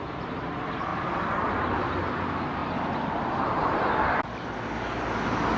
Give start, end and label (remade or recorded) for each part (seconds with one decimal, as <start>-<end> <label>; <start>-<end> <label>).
0.0-0.9 recorded; 0.9-1.9 remade; 1.9-2.6 recorded; 2.6-4.7 remade; 4.7-5.6 recorded